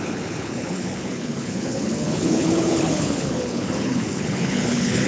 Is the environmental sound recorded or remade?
remade